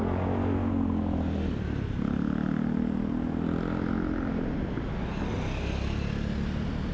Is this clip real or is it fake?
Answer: real